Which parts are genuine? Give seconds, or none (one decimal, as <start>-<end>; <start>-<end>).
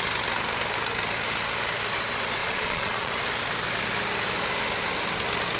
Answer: 0.0-2.4; 3.1-5.6